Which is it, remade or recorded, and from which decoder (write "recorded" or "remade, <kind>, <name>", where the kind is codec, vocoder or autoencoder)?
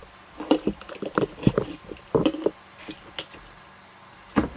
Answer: recorded